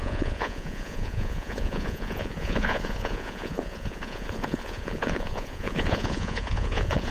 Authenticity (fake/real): fake